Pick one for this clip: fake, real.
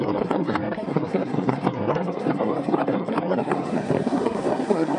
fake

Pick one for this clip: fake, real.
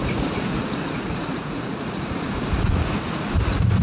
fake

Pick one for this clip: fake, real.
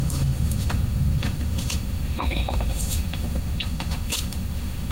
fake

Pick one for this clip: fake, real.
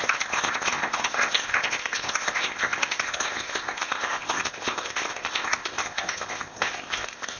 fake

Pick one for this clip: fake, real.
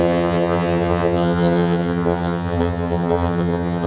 fake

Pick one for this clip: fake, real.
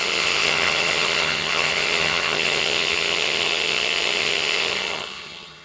fake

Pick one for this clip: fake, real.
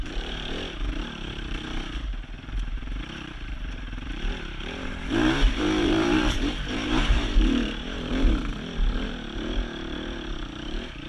fake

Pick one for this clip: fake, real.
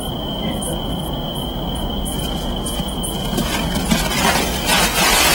real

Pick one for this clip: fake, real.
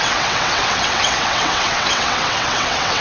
fake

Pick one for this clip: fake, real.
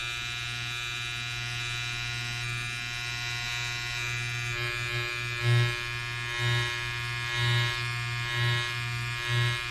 real